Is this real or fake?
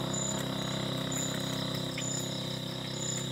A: real